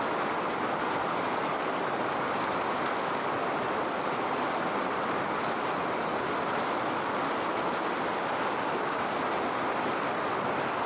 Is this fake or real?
real